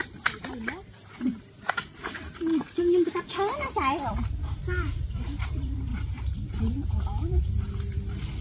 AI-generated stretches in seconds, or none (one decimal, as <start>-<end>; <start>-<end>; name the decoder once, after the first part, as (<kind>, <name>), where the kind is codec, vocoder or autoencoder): 0.0-3.3 (vocoder, BigVGAN v2); 4.1-5.9; 6.6-8.4

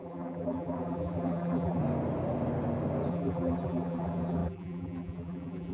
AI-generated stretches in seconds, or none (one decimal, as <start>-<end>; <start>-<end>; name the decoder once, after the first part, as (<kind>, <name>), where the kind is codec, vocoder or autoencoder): 0.0-1.8 (vocoder, BigVGAN v2); 3.1-5.7

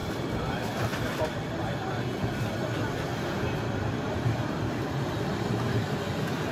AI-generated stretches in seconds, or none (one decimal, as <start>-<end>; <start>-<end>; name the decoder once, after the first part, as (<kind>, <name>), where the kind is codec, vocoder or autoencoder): 0.0-0.5 (vocoder, BigVGAN v2); 0.9-2.0; 3.1-5.9